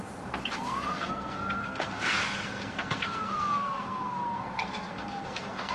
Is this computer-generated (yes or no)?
yes